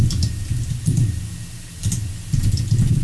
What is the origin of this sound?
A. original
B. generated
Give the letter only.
A